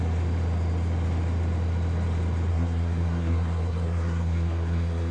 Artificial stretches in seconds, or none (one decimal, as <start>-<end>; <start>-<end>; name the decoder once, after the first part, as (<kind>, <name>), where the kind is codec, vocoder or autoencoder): 2.5-5.1 (codec, SNAC)

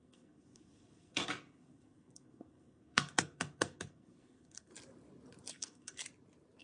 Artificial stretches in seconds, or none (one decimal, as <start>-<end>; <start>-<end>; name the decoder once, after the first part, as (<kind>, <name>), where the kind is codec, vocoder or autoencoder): 0.0-4.7 (codec, SNAC); 5.5-6.0

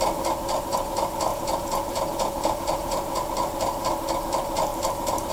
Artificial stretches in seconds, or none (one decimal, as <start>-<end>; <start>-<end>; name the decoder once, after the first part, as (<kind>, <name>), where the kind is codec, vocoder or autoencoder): 1.3-3.2 (vocoder, Vocos)

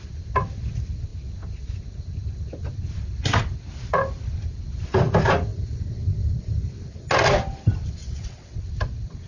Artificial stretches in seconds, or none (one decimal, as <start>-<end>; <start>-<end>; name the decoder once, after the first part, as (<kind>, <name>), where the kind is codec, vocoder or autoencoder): 8.0-8.6 (vocoder, WaveNeXt)